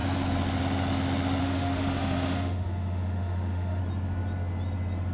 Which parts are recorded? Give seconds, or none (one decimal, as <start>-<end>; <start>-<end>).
0.0-1.4; 3.8-5.1

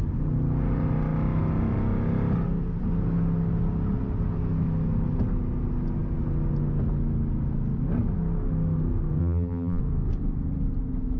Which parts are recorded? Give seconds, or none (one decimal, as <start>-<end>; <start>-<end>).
0.0-9.2; 9.8-11.2

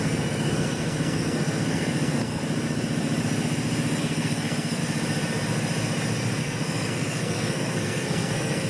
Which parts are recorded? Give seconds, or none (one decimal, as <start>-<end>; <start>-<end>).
2.4-4.0; 4.8-6.4